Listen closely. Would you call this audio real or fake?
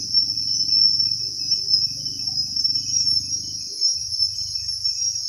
real